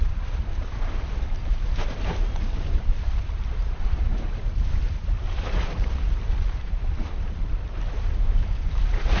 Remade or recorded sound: remade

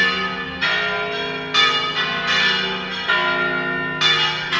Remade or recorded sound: recorded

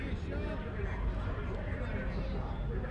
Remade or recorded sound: recorded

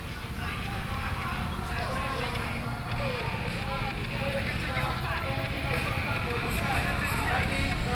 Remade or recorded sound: recorded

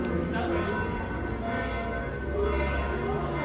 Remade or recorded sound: recorded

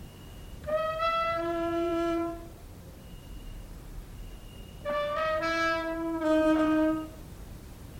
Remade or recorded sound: remade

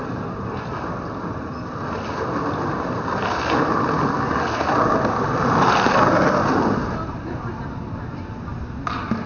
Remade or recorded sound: remade